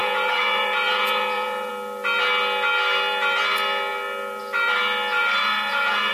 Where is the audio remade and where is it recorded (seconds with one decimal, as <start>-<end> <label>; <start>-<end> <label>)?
0.0-1.7 remade; 1.7-5.4 recorded; 5.4-6.1 remade